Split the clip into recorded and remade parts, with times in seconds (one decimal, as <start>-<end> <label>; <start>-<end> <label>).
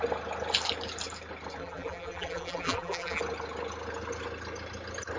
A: 0.0-1.6 recorded; 1.6-3.2 remade; 3.2-5.2 recorded